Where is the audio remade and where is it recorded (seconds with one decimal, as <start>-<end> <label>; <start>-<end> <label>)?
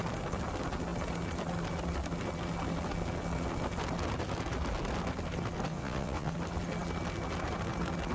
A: 0.0-5.7 recorded; 5.7-6.3 remade; 6.3-8.1 recorded